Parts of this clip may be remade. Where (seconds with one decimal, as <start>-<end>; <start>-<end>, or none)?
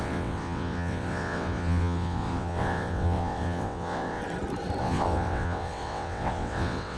0.0-4.2; 4.8-7.0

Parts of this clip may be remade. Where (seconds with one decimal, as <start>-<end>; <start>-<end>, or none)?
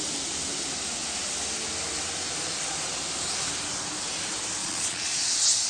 4.6-5.3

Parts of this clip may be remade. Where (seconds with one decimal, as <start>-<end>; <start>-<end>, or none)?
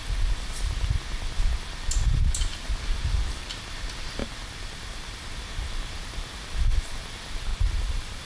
4.2-5.4; 7.5-8.2